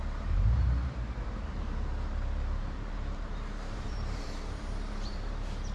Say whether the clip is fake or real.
fake